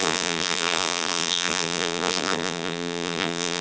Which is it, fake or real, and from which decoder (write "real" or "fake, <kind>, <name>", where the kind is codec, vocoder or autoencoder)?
fake, vocoder, BigVGAN v2